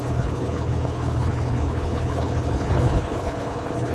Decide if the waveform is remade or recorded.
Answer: remade